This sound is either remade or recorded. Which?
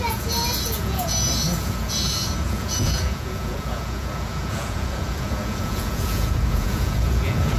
remade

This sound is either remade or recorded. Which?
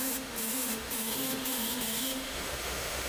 remade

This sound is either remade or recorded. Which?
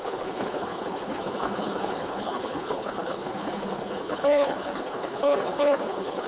remade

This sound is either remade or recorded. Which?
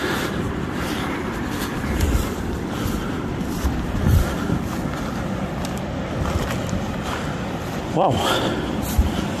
remade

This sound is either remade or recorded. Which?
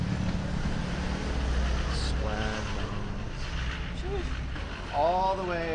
recorded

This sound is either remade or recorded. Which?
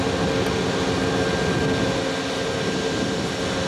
recorded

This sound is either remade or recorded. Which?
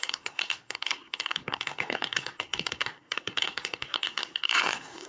remade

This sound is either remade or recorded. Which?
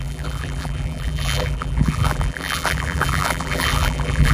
remade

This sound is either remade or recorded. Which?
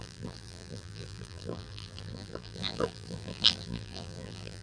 remade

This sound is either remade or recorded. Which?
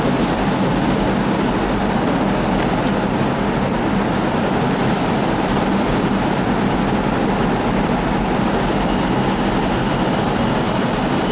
recorded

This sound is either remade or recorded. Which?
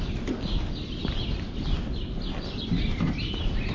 recorded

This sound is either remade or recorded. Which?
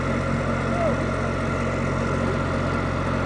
recorded